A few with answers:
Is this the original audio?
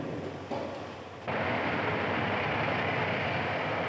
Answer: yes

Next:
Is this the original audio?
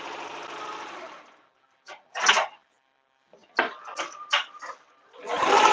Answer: yes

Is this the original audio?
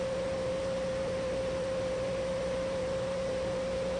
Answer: yes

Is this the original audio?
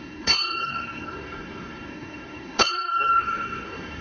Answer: no